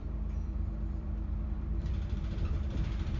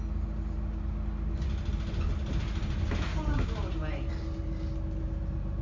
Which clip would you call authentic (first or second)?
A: second